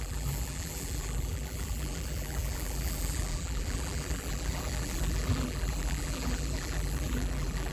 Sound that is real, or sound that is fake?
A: fake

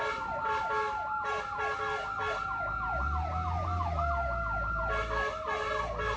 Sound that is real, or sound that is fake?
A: real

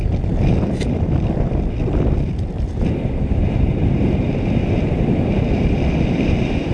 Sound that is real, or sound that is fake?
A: fake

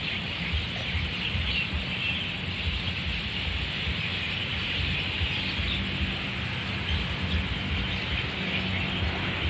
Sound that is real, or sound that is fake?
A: real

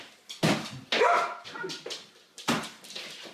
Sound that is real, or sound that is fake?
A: real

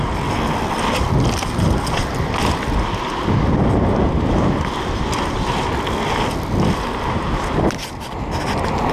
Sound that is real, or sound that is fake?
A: real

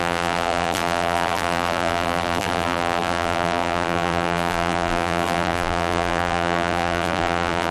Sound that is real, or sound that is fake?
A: fake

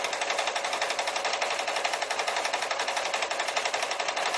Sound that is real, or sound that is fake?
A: fake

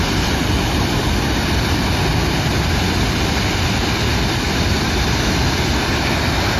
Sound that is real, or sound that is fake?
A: real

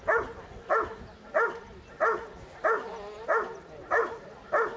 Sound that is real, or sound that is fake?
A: real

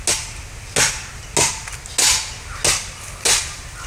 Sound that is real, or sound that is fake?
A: real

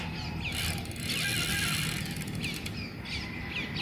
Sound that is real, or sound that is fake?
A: real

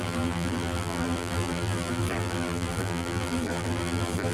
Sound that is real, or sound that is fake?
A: fake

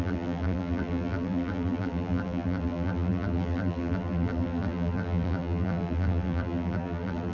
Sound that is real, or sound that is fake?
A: fake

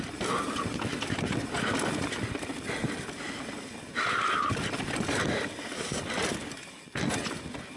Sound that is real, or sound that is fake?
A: real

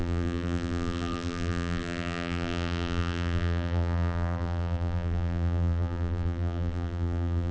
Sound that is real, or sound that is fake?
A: fake